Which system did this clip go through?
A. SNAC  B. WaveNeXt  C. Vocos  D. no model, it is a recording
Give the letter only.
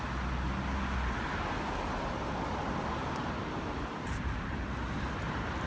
D